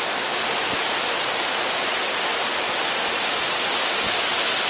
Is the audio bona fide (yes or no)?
yes